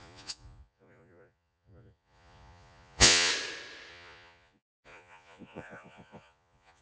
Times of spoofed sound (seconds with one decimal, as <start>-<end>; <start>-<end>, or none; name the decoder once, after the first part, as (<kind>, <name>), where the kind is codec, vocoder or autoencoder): 0.0-3.3 (vocoder, Vocos); 3.9-6.8